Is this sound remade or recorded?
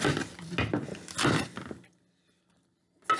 recorded